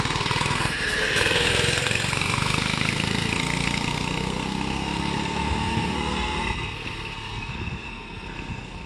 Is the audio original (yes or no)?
no